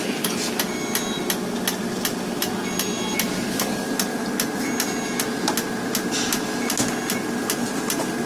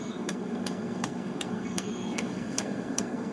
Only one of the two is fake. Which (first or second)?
second